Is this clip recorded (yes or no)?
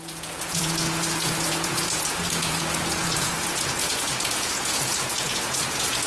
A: no